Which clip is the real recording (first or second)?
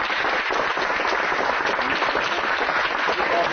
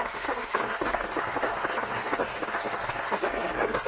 first